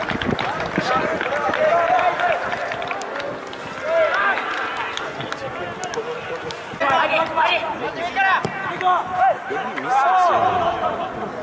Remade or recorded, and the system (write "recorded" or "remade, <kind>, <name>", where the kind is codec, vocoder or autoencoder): recorded